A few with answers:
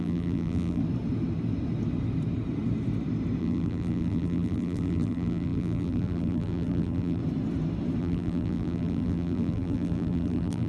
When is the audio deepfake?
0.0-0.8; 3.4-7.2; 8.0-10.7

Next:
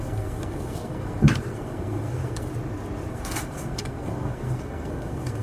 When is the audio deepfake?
0.0-2.5; 3.1-5.4

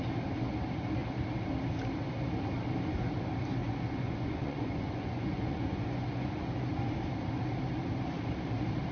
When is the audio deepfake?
3.6-6.5

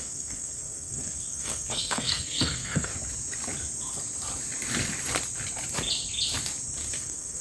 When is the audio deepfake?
0.0-2.9; 6.9-7.4

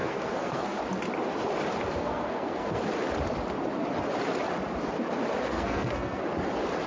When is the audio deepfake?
0.0-0.8; 2.0-2.8; 5.4-6.2

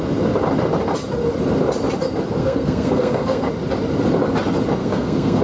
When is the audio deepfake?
2.4-3.5; 4.8-5.4

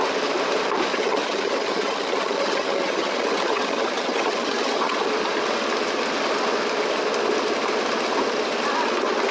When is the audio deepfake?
0.9-5.1

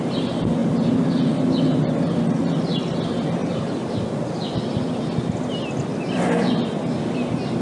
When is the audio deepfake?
3.4-4.3; 5.9-6.6